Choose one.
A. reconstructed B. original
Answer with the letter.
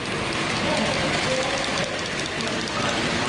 B